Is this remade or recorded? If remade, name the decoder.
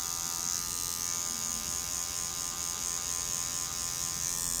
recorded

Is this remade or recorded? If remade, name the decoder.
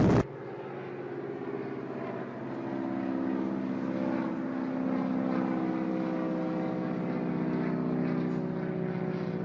recorded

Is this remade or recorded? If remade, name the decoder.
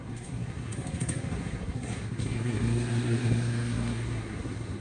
remade, codec, SNAC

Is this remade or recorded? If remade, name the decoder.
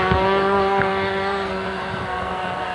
remade, codec, SNAC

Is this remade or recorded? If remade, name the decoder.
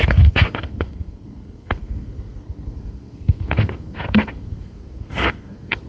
remade, codec, SNAC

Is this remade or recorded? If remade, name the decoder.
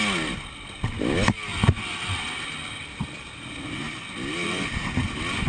recorded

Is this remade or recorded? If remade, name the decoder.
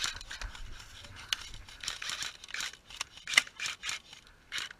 recorded